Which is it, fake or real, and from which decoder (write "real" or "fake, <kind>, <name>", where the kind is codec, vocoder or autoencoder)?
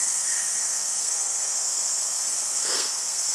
fake, codec, SNAC